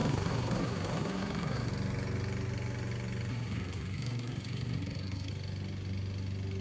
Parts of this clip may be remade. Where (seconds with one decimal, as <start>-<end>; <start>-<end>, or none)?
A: 0.0-1.7; 3.3-5.3